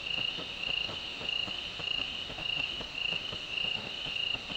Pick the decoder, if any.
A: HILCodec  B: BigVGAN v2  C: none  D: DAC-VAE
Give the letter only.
D